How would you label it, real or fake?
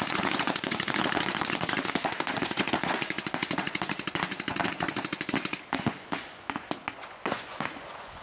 fake